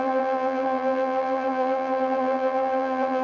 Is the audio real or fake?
fake